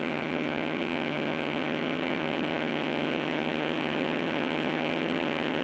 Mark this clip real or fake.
fake